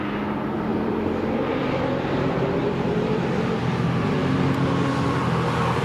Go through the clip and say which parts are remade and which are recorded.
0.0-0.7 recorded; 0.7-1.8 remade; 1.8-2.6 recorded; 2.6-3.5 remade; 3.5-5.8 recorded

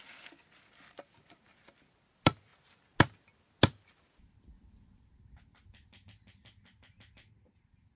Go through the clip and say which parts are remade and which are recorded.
0.0-8.0 recorded

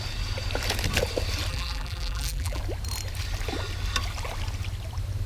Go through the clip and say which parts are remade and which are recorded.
0.0-1.5 recorded; 1.5-2.6 remade; 2.6-5.3 recorded

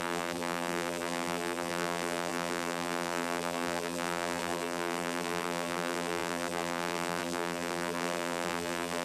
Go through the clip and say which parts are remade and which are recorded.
0.0-9.0 remade

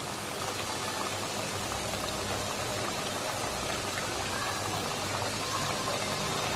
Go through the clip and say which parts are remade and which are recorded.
0.0-2.7 recorded; 2.7-5.7 remade; 5.7-6.6 recorded